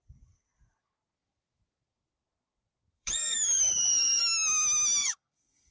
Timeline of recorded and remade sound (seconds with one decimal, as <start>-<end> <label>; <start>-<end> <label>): 0.0-0.8 recorded; 0.8-4.2 remade; 4.2-5.0 recorded; 5.0-5.7 remade

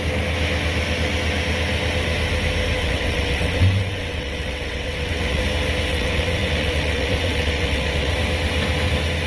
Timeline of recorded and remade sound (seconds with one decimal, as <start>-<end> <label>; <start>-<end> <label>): 0.0-2.8 recorded; 2.8-5.4 remade; 5.4-5.9 recorded; 5.9-8.1 remade; 8.1-9.3 recorded

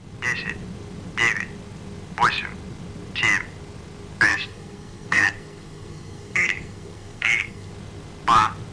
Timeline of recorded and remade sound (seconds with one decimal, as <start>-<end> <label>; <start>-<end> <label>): 0.0-4.3 recorded; 4.3-7.7 remade; 7.7-8.7 recorded

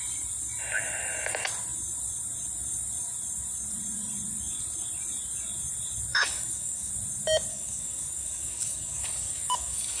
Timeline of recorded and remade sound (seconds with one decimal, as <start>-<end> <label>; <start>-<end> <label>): 0.0-6.1 recorded; 6.1-6.9 remade; 6.9-7.5 recorded; 7.5-10.0 remade

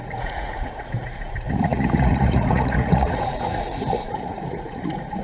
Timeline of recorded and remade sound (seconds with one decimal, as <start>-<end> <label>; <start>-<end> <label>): 0.0-5.2 remade